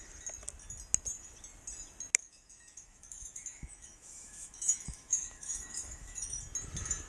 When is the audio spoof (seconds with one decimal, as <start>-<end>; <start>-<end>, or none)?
2.2-6.4